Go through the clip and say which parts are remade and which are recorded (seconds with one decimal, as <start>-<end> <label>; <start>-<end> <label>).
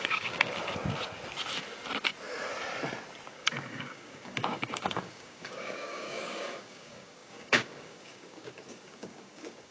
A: 0.0-0.8 remade; 0.8-3.3 recorded; 3.3-9.7 remade